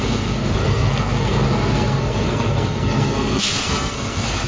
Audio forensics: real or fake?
fake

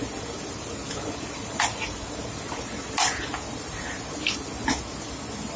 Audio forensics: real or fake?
real